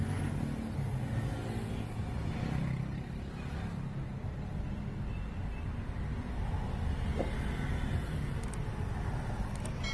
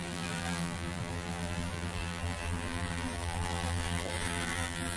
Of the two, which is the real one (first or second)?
first